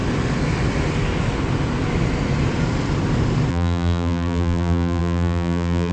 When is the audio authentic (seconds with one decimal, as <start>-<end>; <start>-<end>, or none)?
0.0-3.5